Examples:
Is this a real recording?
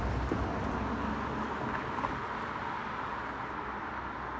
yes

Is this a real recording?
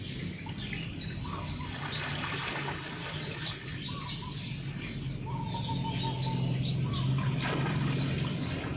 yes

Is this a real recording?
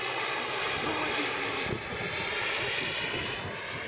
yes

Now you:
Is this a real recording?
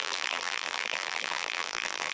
no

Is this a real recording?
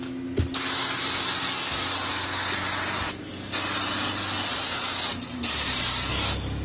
yes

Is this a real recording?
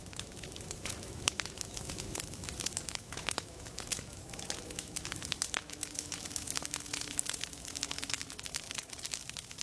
no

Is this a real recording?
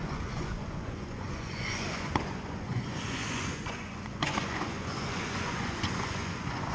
no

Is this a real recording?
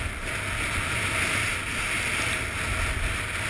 yes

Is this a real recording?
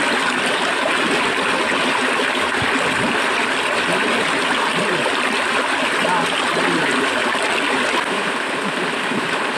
yes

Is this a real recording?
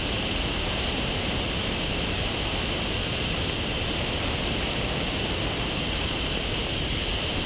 yes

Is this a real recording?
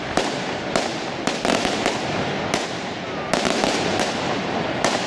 no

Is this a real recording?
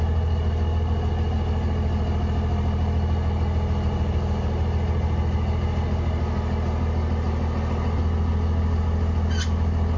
yes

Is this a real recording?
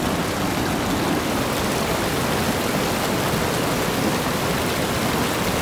yes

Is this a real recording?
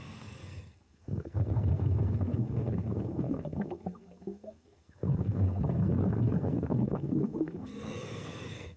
no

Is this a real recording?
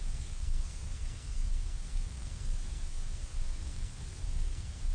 no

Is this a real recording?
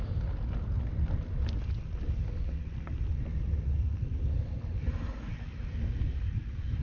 yes